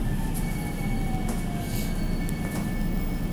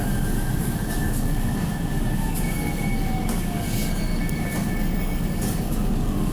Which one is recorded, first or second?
first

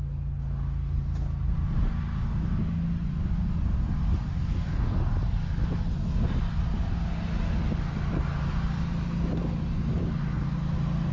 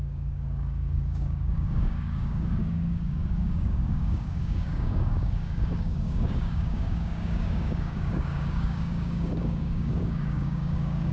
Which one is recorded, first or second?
first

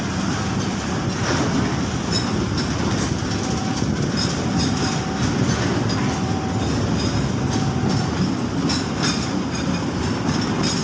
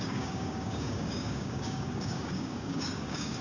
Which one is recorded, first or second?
first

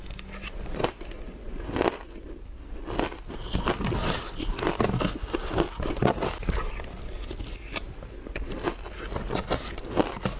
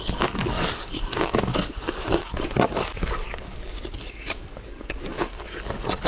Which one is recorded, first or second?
first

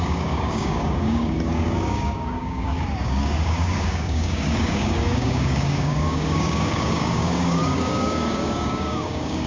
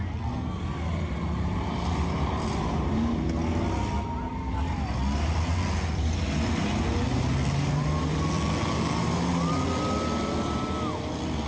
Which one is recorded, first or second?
second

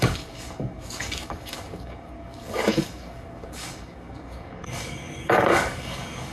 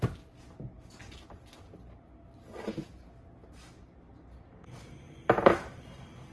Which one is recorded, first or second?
second